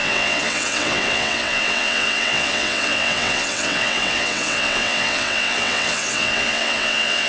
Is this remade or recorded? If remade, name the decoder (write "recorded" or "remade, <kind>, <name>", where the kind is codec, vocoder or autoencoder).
remade, vocoder, WaveNeXt